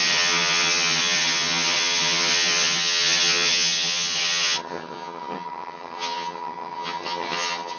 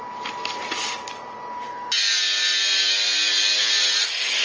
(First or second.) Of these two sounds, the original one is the second